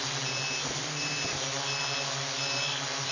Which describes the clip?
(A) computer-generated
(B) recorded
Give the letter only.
B